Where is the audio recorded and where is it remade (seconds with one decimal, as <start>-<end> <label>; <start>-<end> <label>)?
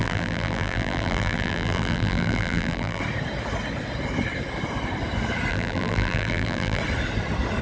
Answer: 0.0-3.0 remade; 3.0-5.5 recorded; 5.5-6.8 remade; 6.8-7.6 recorded